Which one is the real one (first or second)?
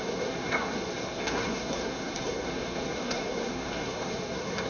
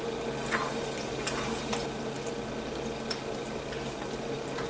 second